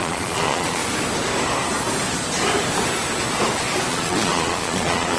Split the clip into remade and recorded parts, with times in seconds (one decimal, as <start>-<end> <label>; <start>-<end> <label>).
0.0-0.8 remade; 0.8-3.9 recorded; 3.9-5.2 remade